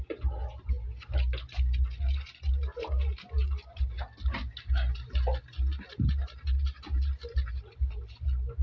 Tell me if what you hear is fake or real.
real